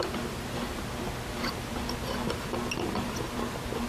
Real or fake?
real